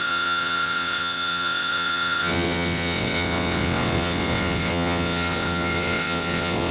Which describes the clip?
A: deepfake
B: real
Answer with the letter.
A